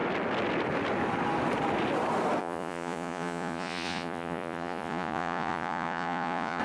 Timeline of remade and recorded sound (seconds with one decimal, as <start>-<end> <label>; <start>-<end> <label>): 0.0-2.4 recorded; 2.4-6.6 remade